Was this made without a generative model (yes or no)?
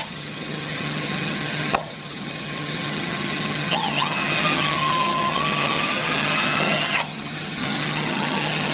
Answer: no